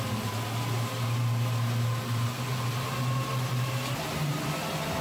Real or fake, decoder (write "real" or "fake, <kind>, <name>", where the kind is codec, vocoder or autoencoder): real